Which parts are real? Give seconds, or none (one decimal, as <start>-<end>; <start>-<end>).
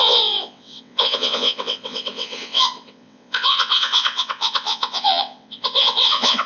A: none